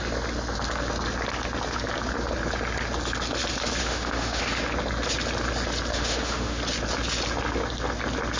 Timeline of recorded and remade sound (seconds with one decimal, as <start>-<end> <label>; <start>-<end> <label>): 0.0-3.8 recorded; 3.8-4.4 remade; 4.4-5.9 recorded; 5.9-6.6 remade; 6.6-8.4 recorded